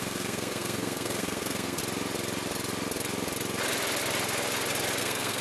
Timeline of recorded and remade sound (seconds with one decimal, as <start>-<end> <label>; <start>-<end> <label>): 0.0-1.8 remade; 1.8-5.0 recorded; 5.0-5.4 remade